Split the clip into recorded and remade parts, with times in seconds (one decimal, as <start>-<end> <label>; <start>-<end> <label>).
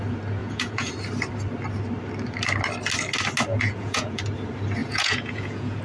0.0-0.4 recorded; 0.4-0.9 remade; 0.9-3.5 recorded; 3.5-4.2 remade; 4.2-4.8 recorded; 4.8-5.8 remade